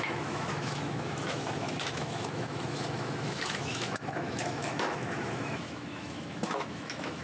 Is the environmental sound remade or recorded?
remade